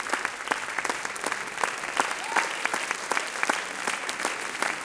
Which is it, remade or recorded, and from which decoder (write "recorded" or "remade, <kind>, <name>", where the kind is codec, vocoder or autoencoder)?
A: recorded